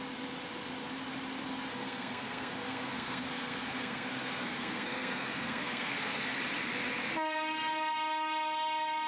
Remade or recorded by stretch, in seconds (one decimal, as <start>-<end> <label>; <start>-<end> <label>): 0.0-1.7 recorded; 1.7-6.4 remade; 6.4-9.1 recorded